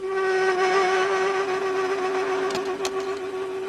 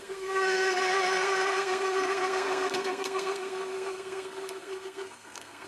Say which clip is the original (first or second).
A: first